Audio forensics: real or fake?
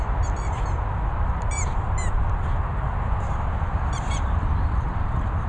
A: real